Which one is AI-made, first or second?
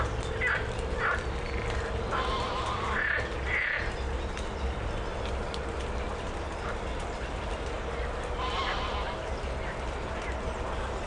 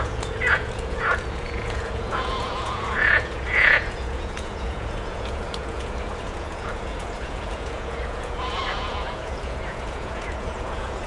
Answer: second